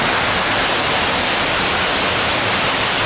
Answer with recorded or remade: recorded